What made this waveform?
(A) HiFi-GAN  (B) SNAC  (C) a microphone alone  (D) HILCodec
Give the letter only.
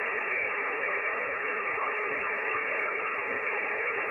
D